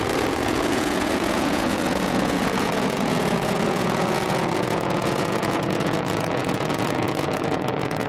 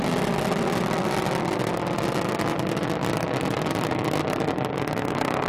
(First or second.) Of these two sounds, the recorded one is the second